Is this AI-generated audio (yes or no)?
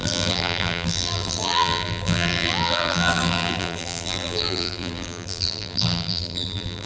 yes